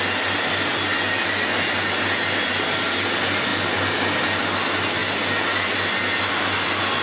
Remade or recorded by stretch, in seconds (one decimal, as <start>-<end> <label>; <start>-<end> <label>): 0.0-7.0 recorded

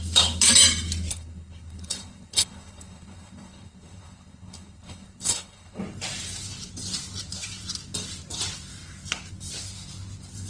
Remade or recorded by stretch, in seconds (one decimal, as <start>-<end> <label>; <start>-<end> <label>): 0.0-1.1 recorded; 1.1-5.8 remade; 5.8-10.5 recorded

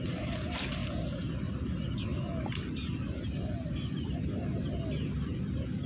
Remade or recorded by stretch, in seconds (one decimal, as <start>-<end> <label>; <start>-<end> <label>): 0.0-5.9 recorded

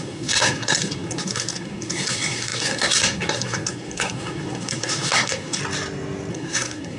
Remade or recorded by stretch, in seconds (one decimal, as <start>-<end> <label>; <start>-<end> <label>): 0.0-5.6 remade; 5.6-6.3 recorded; 6.3-7.0 remade

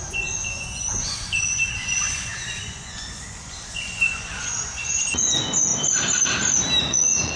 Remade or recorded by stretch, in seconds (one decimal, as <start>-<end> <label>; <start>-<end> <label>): 0.0-5.7 remade; 5.7-6.8 recorded; 6.8-7.4 remade